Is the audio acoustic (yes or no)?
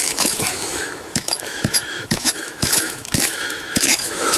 no